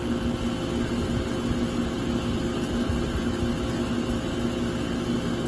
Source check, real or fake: real